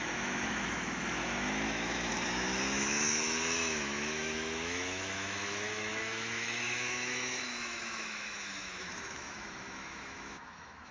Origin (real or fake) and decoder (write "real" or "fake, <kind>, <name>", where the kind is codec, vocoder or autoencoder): fake, autoencoder, DAC-VAE